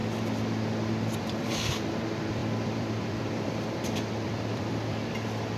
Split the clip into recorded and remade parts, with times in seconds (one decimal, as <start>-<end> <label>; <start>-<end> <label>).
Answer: 0.0-1.2 recorded; 1.2-5.6 remade